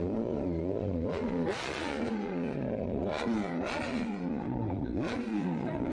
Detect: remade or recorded remade